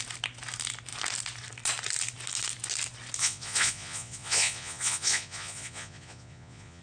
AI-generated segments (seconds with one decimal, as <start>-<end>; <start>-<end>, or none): 3.2-6.8